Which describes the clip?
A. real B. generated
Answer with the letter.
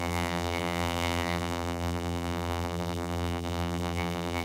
B